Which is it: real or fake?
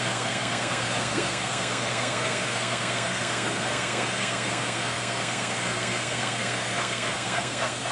fake